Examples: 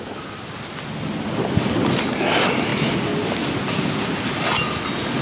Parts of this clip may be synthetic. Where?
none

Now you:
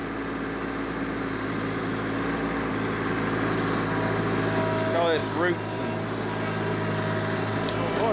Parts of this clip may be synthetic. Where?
5.2-5.8 (vocoder, BigVGAN v2)

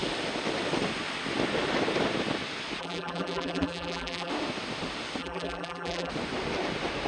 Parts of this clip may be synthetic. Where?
2.8-4.3 (vocoder, BigVGAN v2); 5.2-6.1